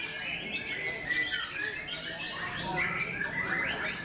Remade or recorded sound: recorded